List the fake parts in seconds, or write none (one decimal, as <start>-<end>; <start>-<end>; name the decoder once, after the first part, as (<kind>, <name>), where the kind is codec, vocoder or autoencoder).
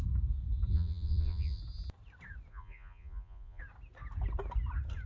0.7-1.6 (vocoder, Vocos); 2.5-3.6